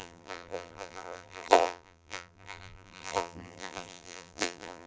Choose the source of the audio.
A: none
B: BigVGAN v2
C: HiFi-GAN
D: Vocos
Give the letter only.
B